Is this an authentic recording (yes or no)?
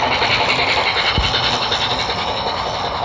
yes